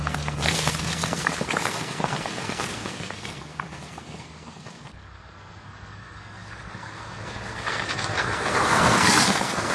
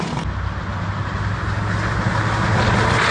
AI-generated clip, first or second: first